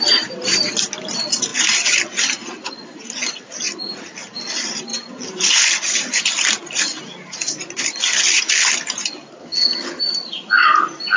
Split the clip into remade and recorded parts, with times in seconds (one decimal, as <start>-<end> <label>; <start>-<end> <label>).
0.0-9.4 recorded; 9.4-10.0 remade; 10.0-11.2 recorded